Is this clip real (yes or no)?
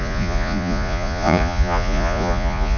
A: no